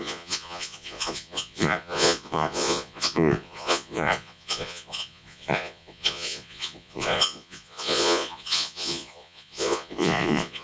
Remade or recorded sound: remade